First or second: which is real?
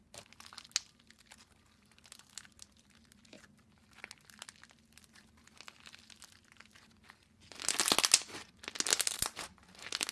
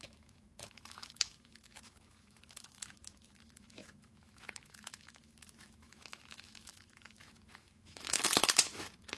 first